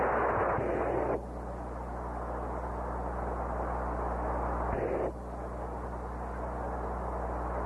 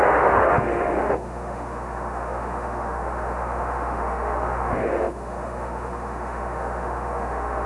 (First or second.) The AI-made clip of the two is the second